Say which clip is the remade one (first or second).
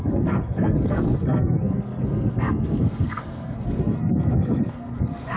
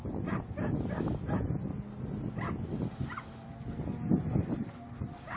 first